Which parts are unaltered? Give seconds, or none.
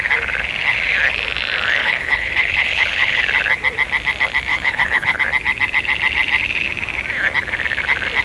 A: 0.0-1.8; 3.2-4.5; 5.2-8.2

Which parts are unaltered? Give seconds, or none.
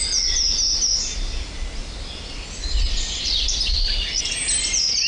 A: 0.0-5.1